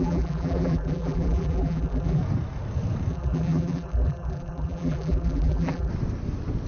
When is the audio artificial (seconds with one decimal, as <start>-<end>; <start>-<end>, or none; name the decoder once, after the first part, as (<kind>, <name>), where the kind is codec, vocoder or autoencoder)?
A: 0.0-2.2 (vocoder, BigVGAN v2); 3.1-5.9